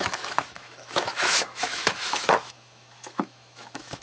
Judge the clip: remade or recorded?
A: remade